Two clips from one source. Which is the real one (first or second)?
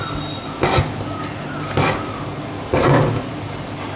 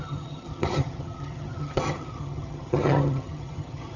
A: first